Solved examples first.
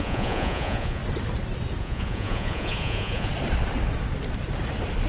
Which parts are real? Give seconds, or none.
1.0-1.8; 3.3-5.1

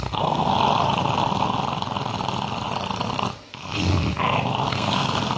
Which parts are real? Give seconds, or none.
0.5-3.5; 3.9-4.7

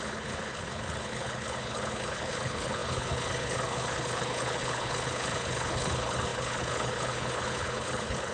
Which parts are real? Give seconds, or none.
none

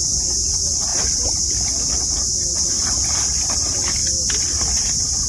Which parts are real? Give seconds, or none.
0.0-5.3

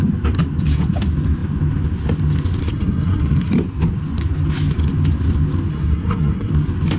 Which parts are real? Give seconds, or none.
0.0-2.6; 3.5-5.7; 6.5-7.0